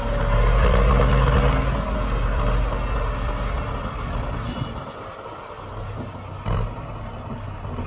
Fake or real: real